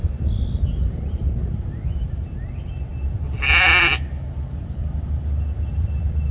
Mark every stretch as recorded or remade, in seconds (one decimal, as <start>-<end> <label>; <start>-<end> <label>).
0.0-1.2 remade; 1.2-4.8 recorded; 4.8-6.3 remade